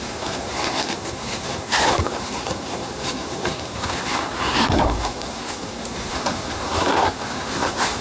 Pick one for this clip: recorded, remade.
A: remade